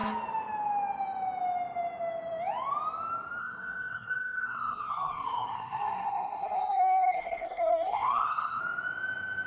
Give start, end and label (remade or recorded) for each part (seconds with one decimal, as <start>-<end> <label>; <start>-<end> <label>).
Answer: 0.0-3.4 recorded; 3.4-8.6 remade; 8.6-9.5 recorded